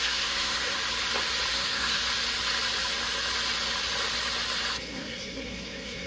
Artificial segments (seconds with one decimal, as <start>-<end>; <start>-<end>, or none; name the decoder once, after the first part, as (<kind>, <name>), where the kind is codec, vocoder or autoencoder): 0.0-0.8 (codec, SNAC); 1.5-2.0; 4.7-6.1